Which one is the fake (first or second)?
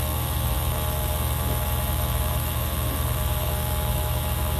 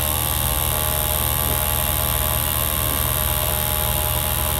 first